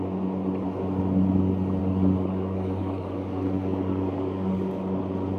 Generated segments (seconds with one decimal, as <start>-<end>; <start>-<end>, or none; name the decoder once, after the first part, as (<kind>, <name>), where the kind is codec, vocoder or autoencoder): 1.8-5.0 (codec, DAC)